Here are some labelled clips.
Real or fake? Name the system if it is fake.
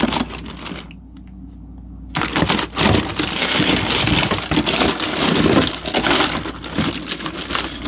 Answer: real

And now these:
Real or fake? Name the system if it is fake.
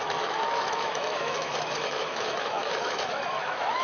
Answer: fake, autoencoder, DAC-VAE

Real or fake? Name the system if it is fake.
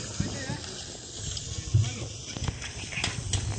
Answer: real